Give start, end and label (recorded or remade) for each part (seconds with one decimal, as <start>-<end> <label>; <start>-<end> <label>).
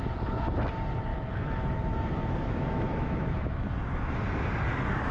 0.0-1.1 recorded; 1.1-3.7 remade; 3.7-5.1 recorded